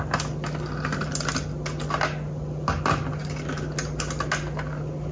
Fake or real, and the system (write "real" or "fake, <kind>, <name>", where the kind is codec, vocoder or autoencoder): real